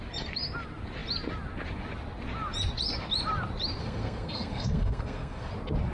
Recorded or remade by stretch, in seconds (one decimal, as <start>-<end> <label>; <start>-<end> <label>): 0.0-3.8 recorded; 3.8-5.5 remade; 5.5-5.9 recorded